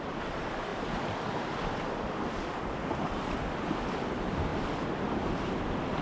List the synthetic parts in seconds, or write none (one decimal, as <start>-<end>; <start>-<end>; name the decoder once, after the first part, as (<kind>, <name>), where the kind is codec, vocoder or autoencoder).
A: 0.7-3.4 (vocoder, BigVGAN v2); 4.5-5.5